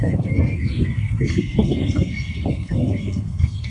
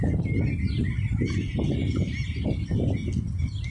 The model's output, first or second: first